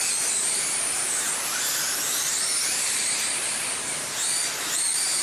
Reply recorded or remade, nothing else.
remade